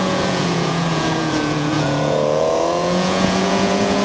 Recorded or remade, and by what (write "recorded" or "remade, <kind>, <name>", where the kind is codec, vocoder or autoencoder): remade, vocoder, Vocos